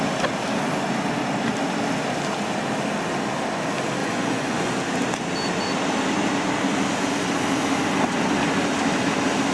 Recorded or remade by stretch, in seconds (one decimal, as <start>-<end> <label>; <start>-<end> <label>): 0.0-4.0 recorded; 4.0-4.7 remade; 4.7-9.5 recorded